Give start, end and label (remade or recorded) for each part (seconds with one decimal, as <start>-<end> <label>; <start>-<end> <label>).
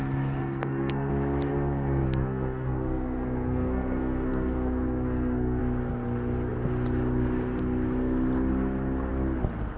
0.0-0.4 recorded; 0.4-1.1 remade; 1.1-1.5 recorded; 1.5-5.6 remade; 5.6-9.8 recorded